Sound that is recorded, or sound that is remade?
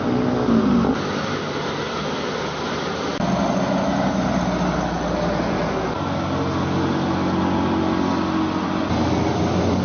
recorded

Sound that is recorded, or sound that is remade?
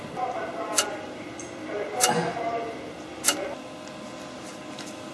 recorded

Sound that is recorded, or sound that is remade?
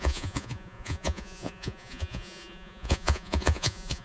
remade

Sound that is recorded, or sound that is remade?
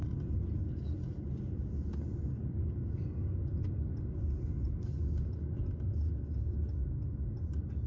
recorded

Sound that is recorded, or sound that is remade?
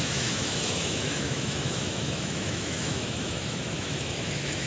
remade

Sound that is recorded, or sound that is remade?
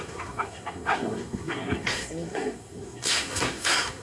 remade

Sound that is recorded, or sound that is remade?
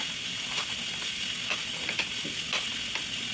recorded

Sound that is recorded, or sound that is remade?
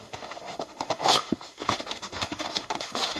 remade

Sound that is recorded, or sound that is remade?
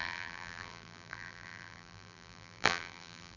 remade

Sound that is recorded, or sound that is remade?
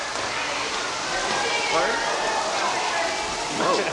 recorded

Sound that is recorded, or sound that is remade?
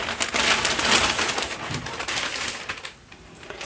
recorded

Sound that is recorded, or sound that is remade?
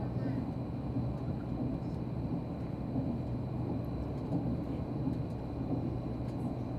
recorded